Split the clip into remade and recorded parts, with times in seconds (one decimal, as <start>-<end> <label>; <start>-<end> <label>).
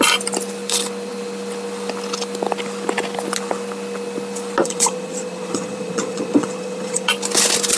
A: 0.0-4.6 recorded; 4.6-7.1 remade; 7.1-7.8 recorded